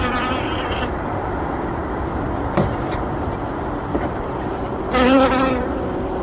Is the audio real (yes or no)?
no